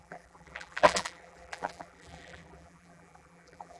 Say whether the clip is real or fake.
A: fake